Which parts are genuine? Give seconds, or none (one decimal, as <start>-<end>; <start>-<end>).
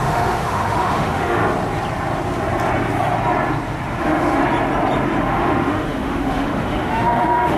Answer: 1.4-4.0; 4.4-5.2